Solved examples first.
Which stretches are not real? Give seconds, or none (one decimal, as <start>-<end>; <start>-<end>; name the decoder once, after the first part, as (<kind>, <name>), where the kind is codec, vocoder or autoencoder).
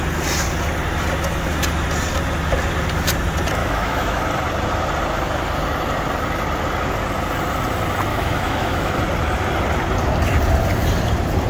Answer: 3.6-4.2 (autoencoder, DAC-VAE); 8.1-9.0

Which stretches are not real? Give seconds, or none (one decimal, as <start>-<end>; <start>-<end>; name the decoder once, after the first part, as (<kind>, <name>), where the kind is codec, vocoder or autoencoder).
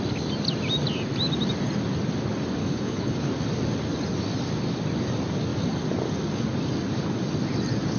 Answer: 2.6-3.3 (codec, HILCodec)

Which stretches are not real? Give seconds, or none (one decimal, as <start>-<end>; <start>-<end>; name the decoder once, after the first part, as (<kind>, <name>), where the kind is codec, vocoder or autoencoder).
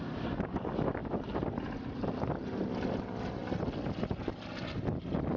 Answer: none